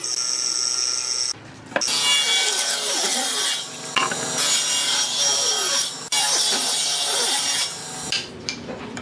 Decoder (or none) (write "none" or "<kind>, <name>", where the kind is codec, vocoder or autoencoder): none